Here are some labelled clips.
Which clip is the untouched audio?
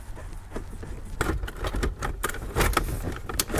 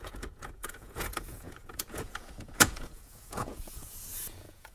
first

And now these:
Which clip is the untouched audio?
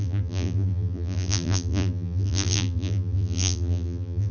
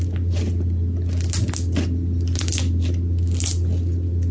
second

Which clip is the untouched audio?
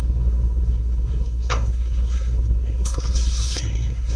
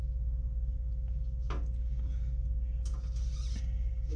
second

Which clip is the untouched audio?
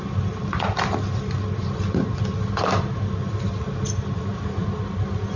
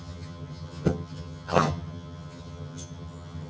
first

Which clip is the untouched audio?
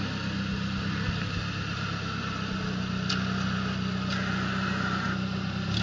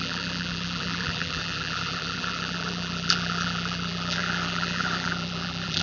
first